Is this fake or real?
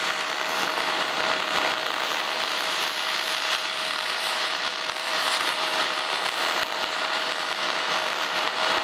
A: fake